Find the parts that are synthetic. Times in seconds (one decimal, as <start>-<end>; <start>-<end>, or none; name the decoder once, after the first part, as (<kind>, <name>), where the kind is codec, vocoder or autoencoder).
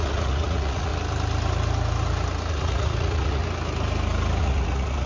0.0-0.9 (vocoder, Vocos); 2.5-3.4; 4.4-5.1